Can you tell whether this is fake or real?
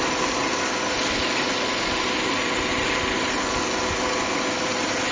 real